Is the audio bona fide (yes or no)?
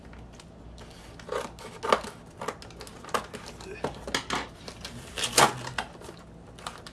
yes